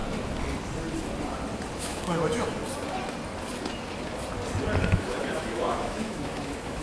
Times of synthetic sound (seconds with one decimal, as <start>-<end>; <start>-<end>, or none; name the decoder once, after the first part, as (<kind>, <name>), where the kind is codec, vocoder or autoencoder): 1.8-2.6 (autoencoder, DAC-VAE); 4.8-6.8